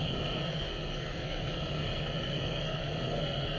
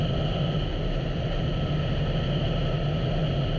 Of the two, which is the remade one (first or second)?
first